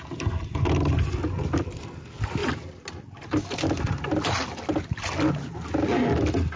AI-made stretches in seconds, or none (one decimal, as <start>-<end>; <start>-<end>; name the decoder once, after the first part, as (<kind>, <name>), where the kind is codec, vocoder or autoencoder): none